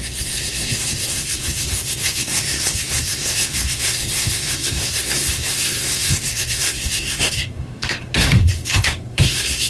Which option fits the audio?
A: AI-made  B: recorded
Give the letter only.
A